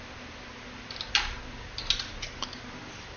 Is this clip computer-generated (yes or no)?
no